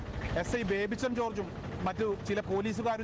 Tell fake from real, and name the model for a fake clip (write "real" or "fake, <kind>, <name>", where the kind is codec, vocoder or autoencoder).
real